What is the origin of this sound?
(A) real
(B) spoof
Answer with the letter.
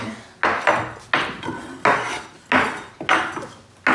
A